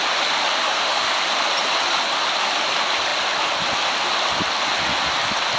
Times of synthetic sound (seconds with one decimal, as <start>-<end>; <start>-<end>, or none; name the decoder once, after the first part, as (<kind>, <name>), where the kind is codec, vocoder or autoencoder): 0.6-1.1 (autoencoder, DAC-VAE)